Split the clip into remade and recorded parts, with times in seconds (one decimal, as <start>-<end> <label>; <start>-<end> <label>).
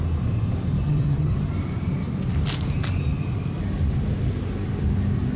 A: 0.0-0.8 recorded; 0.8-1.4 remade; 1.4-5.4 recorded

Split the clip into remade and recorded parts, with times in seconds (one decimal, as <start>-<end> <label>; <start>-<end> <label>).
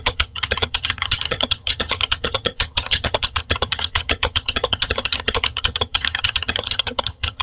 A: 0.0-7.4 remade